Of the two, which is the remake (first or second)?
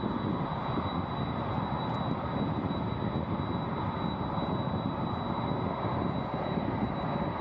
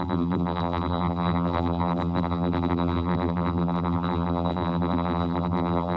second